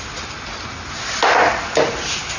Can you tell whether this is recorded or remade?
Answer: recorded